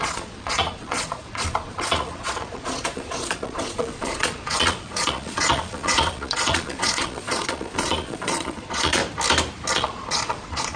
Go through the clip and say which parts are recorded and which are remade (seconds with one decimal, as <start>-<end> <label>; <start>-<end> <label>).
0.0-9.0 remade; 9.0-9.7 recorded; 9.7-10.8 remade